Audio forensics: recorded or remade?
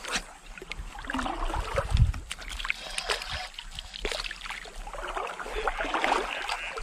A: recorded